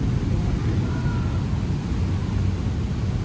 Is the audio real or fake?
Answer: real